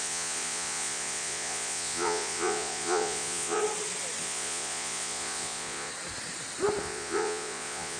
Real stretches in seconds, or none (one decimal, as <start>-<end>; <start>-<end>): 3.6-4.2; 5.9-6.8